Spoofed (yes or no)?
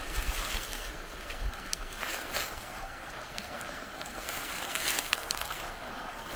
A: yes